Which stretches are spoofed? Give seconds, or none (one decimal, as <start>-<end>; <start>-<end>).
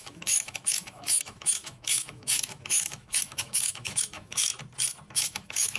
0.0-4.5; 5.1-5.8